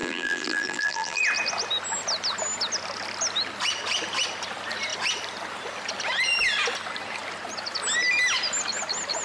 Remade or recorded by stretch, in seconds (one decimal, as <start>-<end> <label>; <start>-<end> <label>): 0.0-1.2 remade; 1.2-9.2 recorded